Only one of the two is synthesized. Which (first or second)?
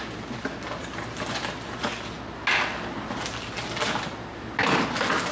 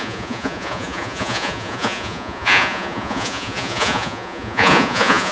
second